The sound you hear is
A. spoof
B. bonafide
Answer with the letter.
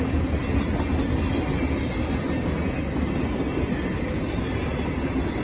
B